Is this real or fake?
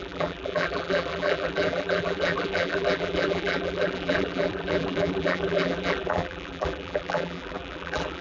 fake